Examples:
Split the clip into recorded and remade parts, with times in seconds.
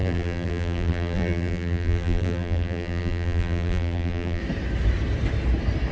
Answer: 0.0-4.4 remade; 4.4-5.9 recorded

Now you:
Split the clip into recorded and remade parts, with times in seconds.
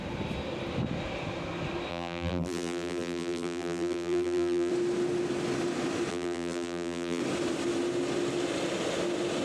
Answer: 0.0-1.9 recorded; 1.9-4.7 remade; 4.7-6.1 recorded; 6.1-7.2 remade; 7.2-9.4 recorded